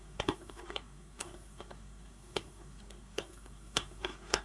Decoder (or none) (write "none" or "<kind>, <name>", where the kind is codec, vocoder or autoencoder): codec, SNAC